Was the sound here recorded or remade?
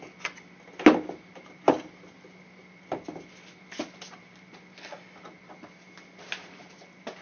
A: recorded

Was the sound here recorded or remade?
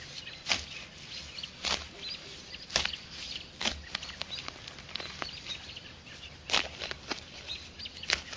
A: recorded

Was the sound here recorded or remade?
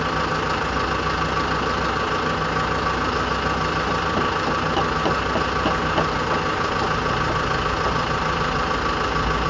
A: recorded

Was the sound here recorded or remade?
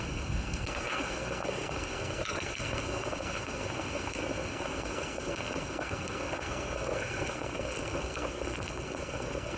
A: remade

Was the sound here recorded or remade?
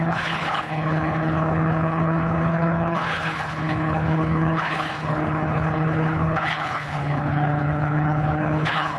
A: remade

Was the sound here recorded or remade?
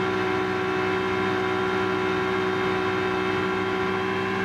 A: recorded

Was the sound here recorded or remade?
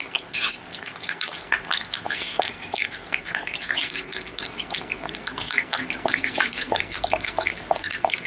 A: remade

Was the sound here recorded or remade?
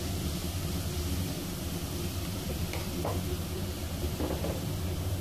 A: remade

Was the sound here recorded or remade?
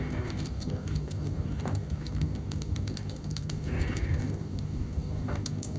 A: remade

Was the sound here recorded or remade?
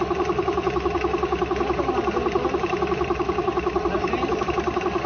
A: recorded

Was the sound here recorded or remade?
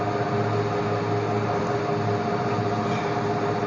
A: recorded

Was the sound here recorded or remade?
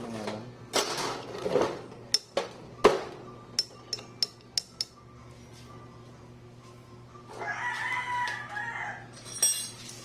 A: recorded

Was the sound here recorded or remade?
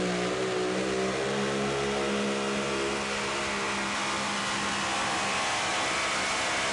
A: recorded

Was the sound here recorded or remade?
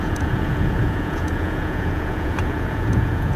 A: remade